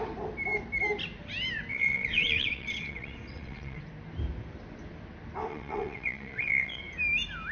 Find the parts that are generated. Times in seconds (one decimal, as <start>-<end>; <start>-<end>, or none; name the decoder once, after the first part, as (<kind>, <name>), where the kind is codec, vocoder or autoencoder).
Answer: 1.7-3.8 (vocoder, WaveNeXt); 5.5-6.8